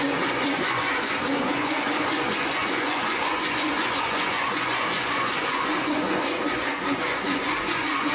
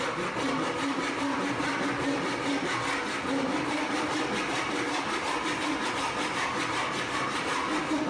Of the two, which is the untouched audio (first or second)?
second